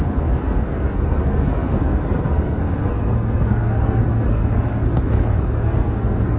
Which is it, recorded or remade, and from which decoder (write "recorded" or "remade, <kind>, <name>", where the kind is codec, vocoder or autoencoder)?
remade, codec, SNAC